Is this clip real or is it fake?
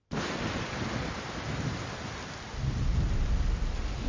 real